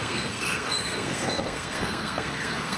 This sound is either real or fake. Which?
fake